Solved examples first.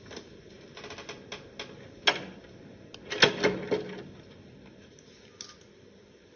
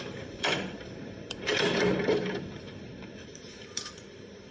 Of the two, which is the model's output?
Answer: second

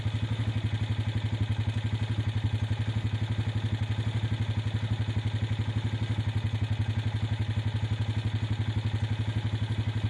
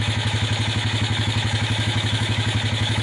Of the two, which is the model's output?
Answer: second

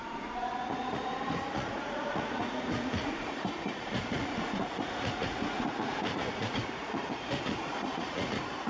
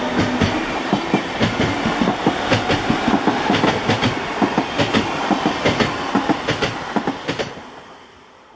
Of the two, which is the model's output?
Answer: first